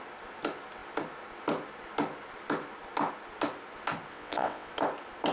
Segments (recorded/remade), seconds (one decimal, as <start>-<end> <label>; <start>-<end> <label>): 0.0-4.1 recorded; 4.1-4.7 remade; 4.7-5.3 recorded